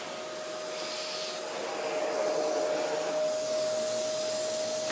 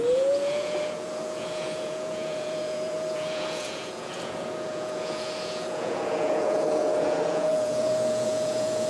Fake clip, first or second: second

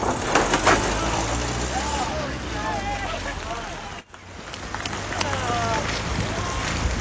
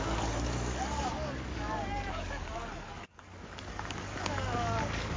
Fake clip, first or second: second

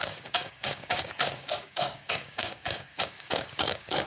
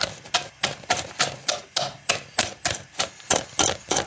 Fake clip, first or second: first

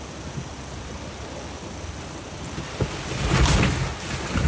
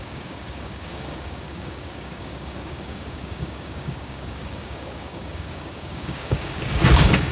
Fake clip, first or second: second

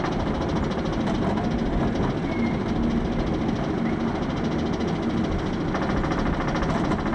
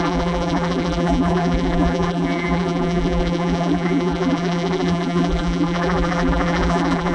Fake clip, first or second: second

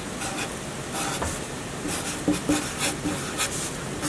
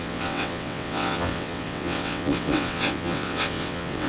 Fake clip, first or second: second